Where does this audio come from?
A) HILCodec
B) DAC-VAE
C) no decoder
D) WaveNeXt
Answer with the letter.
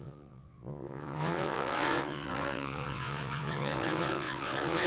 D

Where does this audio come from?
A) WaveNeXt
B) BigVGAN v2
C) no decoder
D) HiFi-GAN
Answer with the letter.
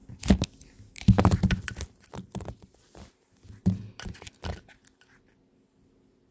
C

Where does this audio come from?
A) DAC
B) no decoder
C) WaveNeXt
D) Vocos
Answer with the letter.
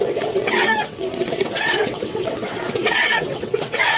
C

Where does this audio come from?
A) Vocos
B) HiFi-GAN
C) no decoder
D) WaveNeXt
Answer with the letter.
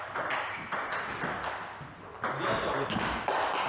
C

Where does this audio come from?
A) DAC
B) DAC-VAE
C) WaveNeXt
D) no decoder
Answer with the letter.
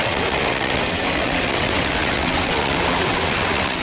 C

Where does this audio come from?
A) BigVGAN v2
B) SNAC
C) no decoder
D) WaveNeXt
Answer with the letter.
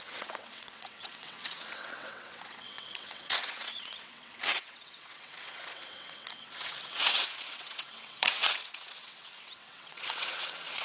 D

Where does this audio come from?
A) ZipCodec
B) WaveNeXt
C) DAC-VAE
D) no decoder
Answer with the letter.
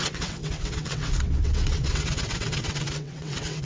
B